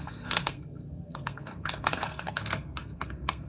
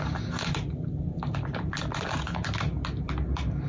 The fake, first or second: first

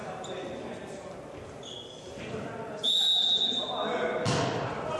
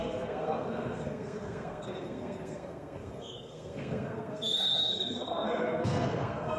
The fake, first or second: second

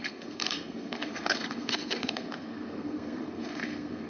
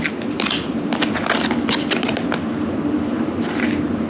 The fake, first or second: first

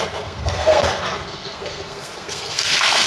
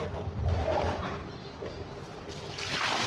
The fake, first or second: first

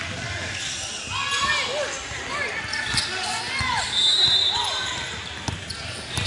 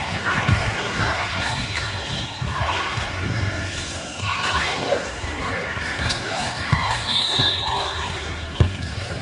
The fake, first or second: second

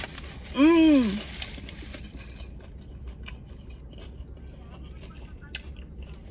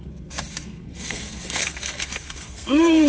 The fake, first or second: second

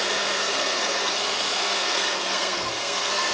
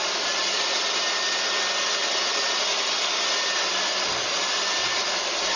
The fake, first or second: first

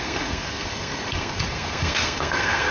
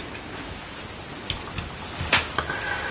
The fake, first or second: first